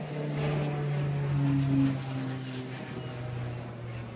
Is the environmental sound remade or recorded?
recorded